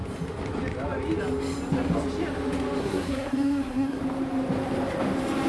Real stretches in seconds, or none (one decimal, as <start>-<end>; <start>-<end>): 0.0-2.8; 4.0-5.5